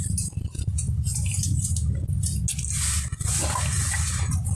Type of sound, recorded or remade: recorded